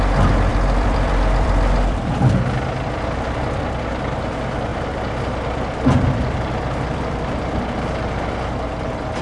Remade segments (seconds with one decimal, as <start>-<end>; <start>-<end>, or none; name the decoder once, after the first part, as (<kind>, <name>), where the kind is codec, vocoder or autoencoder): 0.5-2.2 (vocoder, BigVGAN v2); 4.7-7.1